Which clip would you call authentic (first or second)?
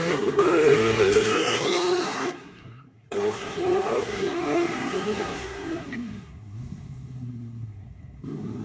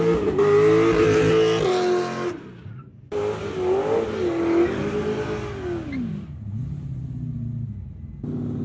second